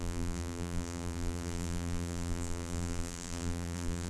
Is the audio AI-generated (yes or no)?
yes